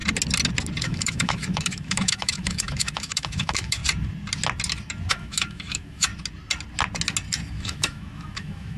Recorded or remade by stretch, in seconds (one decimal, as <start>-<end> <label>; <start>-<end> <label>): 0.0-0.8 recorded; 0.8-3.8 remade; 3.8-5.1 recorded; 5.1-6.1 remade; 6.1-7.5 recorded; 7.5-8.8 remade